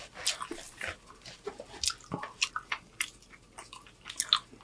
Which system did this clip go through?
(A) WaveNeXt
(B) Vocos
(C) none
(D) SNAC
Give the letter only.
C